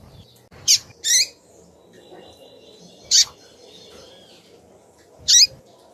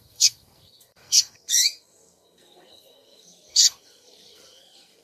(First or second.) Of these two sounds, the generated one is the second